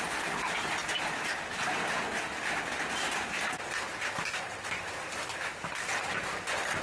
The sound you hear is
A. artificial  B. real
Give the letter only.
B